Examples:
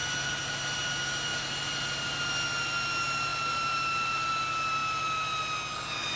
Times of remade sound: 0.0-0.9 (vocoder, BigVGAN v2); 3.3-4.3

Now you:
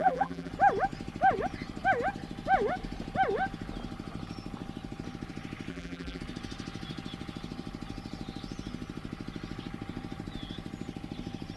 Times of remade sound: 0.0-0.5 (vocoder, BigVGAN v2); 5.7-6.2

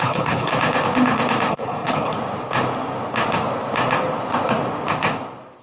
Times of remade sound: 0.0-0.5 (codec, HILCodec); 1.5-2.1

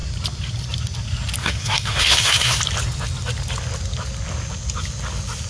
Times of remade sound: 1.4-2.6 (codec, SNAC)